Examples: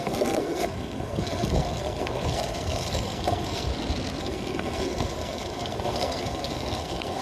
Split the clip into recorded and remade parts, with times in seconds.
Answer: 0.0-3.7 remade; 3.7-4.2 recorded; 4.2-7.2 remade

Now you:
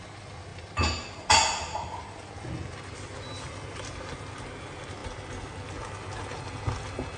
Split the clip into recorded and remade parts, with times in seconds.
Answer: 0.0-7.2 recorded

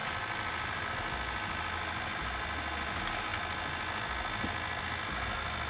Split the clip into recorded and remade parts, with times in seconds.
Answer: 0.0-5.7 recorded

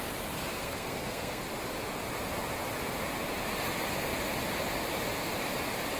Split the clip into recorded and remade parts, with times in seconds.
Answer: 0.0-0.6 recorded; 0.6-1.4 remade; 1.4-6.0 recorded

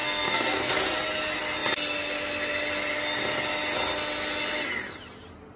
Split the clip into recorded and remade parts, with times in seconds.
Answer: 0.0-0.7 remade; 0.7-5.6 recorded